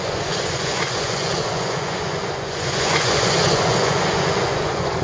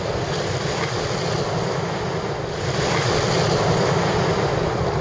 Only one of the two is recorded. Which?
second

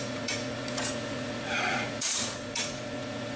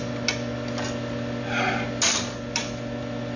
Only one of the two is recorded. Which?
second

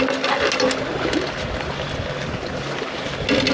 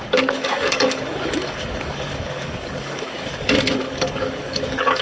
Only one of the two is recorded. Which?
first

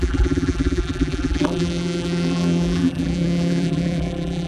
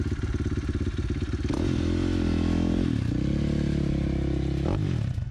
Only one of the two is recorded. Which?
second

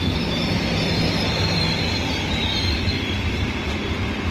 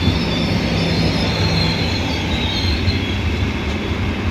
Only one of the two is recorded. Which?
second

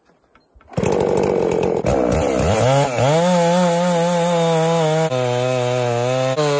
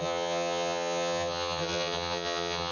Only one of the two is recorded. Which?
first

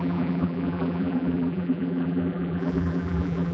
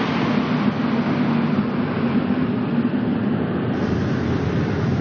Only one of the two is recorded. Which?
second